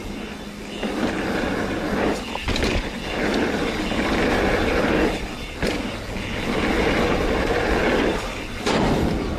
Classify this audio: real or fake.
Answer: real